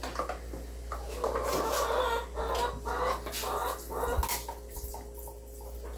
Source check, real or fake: real